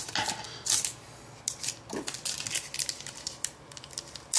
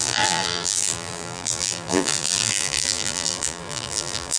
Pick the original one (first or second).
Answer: first